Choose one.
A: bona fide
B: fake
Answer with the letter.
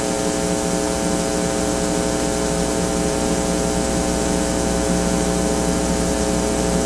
A